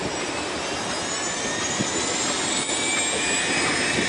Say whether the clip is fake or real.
real